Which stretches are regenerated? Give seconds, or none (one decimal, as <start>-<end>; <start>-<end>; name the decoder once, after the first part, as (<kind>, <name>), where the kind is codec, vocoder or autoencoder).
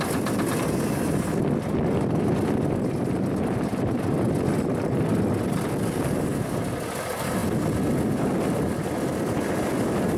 none